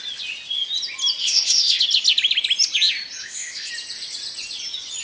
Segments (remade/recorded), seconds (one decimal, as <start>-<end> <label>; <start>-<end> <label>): 0.0-1.2 recorded; 1.2-1.8 remade; 1.8-3.2 recorded; 3.2-3.7 remade; 3.7-5.0 recorded